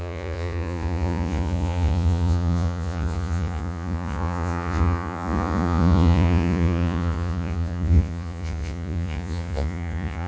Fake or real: fake